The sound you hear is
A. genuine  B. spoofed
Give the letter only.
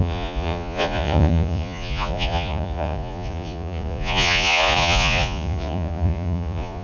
B